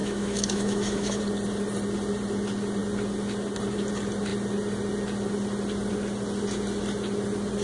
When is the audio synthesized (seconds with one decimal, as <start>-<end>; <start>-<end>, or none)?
0.0-1.2